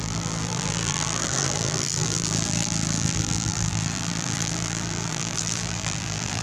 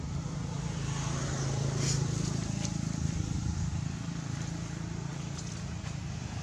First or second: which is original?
second